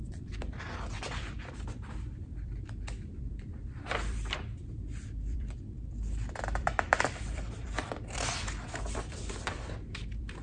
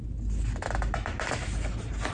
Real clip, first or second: second